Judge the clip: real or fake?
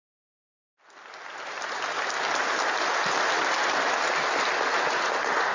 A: real